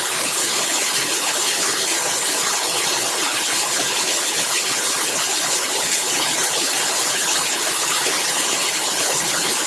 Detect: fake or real fake